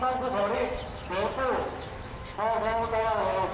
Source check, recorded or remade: remade